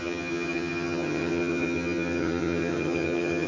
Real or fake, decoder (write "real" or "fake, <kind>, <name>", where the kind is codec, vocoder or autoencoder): fake, vocoder, HiFi-GAN